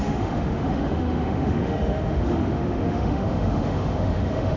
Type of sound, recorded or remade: remade